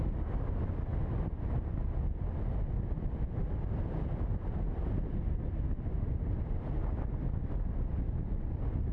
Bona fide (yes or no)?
yes